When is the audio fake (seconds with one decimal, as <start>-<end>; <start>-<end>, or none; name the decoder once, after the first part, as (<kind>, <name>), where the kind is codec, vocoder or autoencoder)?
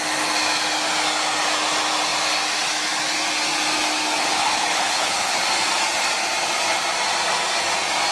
4.2-5.4 (codec, HILCodec)